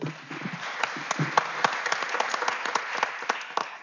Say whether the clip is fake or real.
real